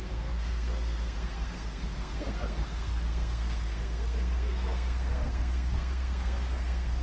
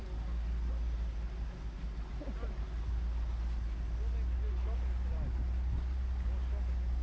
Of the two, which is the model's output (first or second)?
first